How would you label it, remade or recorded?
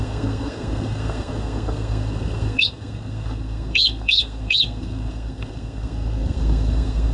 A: remade